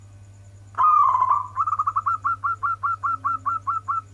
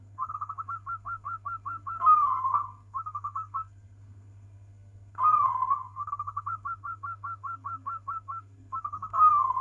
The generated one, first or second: second